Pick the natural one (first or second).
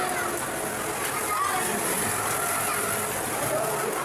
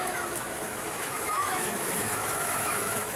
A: first